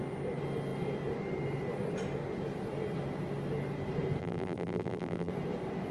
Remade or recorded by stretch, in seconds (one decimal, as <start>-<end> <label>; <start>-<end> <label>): 0.0-4.2 recorded; 4.2-5.3 remade; 5.3-5.9 recorded